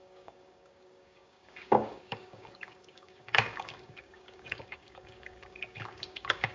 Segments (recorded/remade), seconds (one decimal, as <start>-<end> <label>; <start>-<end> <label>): 0.0-6.5 remade

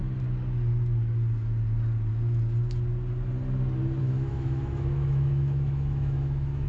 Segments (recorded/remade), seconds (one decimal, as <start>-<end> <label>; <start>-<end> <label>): 0.0-4.0 recorded; 4.0-6.7 remade